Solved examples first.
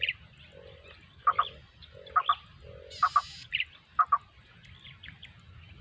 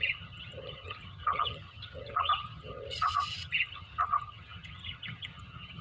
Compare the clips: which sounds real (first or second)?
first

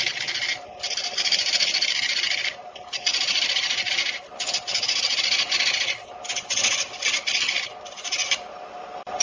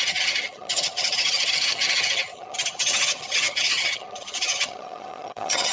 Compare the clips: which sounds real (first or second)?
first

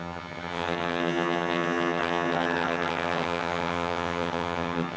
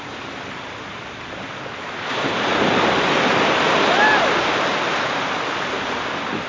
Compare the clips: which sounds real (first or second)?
second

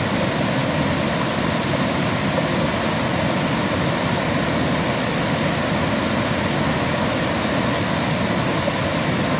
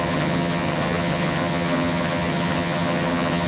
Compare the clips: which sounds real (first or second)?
first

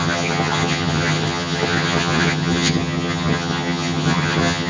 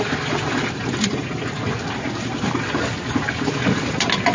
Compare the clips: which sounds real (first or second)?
second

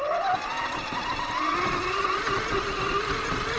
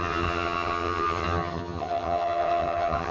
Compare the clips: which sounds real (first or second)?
first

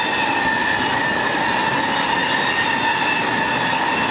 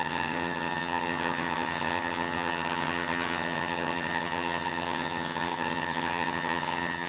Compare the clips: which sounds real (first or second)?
first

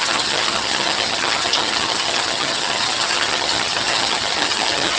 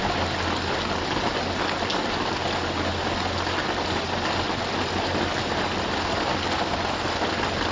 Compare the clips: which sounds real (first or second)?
second